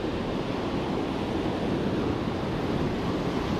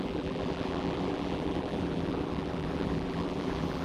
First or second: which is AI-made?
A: second